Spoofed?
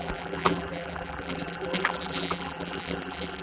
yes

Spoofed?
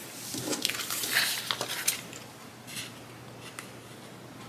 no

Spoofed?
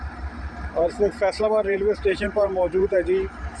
yes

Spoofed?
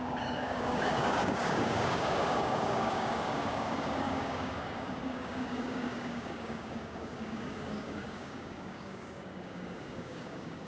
yes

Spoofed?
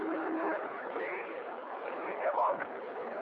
yes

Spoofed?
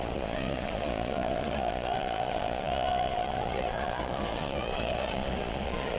yes